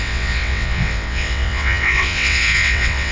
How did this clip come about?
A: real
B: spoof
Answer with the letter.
B